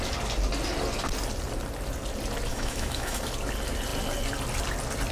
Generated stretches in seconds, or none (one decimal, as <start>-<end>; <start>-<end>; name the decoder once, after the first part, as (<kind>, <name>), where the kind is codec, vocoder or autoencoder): 2.5-3.2 (autoencoder, DAC-VAE)